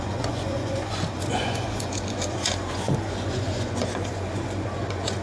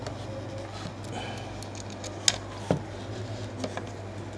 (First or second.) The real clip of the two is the second